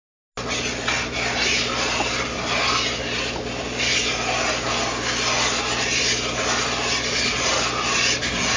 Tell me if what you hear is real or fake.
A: real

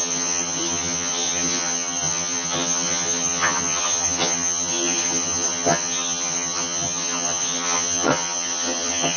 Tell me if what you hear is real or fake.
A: fake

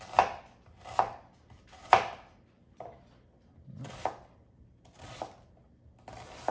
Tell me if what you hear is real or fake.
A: real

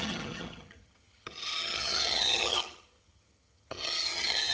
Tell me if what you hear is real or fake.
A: fake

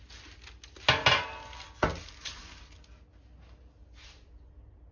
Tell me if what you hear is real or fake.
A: real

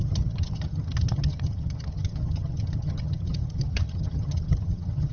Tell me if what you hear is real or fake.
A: fake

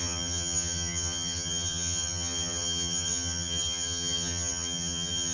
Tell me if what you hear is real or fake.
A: fake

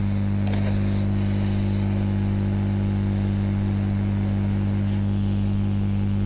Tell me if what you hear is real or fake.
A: real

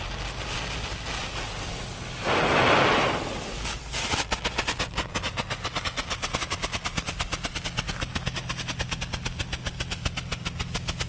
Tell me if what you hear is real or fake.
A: real